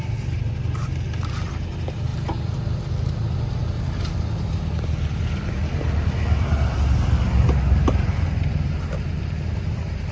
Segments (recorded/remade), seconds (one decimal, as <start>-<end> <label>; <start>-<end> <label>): 0.0-10.1 recorded